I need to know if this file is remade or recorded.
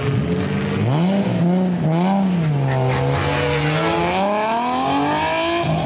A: recorded